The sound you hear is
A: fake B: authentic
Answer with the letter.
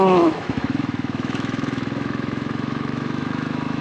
A